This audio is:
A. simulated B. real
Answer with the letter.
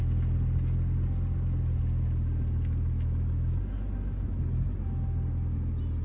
B